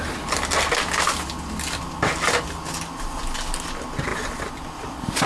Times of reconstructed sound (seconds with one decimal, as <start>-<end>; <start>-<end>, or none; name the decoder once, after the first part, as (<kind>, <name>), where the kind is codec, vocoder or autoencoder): none